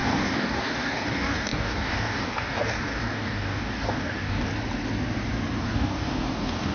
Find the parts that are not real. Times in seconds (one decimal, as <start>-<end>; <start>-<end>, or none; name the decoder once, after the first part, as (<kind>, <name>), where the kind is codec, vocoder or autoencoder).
0.0-4.5 (codec, DAC); 5.6-6.7

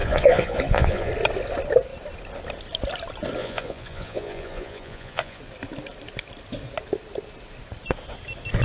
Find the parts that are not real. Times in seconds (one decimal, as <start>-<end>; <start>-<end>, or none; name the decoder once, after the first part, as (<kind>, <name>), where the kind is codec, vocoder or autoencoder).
0.0-1.1 (vocoder, Vocos); 3.4-5.4

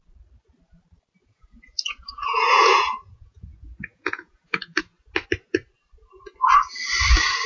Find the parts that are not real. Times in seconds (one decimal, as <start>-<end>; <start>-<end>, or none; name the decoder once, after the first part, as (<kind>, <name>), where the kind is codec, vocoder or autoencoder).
1.2-4.8 (vocoder, Vocos)

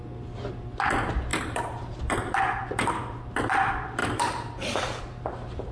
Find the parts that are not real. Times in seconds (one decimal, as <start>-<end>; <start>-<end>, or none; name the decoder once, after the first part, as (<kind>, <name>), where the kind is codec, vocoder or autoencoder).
1.3-2.4 (vocoder, BigVGAN v2); 4.0-5.0